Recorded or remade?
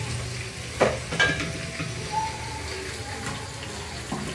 recorded